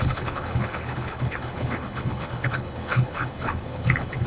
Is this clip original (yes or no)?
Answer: no